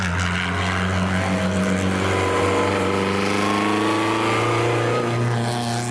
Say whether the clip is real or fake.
real